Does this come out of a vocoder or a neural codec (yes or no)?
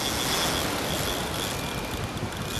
no